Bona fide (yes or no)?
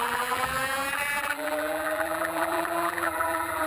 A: no